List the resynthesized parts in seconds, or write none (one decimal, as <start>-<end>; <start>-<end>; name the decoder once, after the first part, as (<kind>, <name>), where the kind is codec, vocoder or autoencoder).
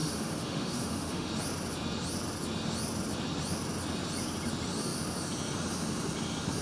0.0-1.3 (autoencoder, DAC-VAE)